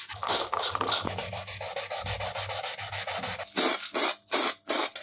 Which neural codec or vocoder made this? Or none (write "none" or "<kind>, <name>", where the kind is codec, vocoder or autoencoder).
none